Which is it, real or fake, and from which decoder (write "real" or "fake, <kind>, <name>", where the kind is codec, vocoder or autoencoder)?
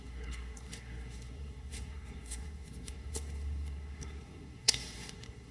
fake, codec, SNAC